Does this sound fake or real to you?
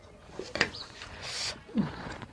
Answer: fake